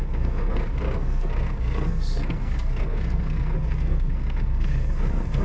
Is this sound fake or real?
fake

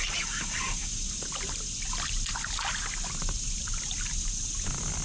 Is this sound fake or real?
real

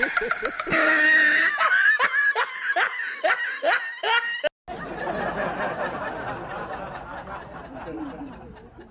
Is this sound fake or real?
real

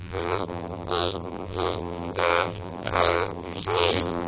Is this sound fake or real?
fake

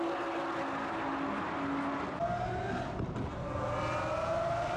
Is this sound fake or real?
real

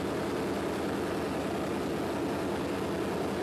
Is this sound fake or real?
real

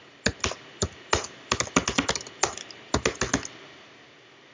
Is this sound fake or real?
real